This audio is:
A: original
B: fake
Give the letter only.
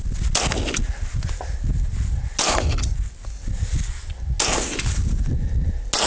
A